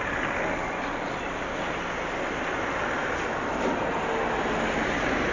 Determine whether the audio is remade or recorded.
recorded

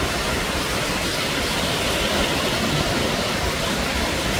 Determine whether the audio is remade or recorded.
recorded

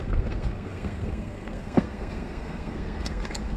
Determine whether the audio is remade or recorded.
remade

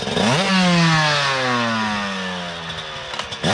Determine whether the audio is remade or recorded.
recorded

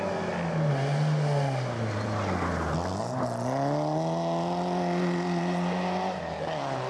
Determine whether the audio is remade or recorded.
recorded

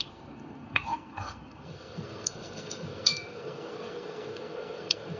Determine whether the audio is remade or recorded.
remade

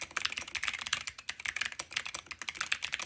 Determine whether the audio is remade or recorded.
recorded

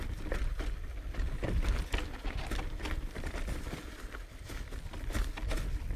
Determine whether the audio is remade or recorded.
recorded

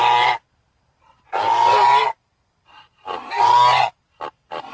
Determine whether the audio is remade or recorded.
recorded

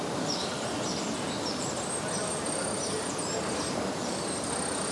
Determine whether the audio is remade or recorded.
recorded